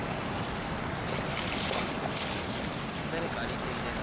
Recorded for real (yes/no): yes